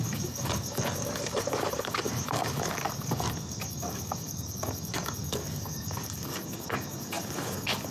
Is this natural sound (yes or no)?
no